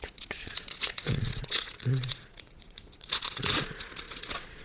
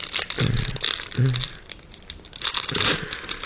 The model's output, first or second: first